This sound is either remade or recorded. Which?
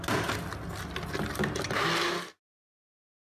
recorded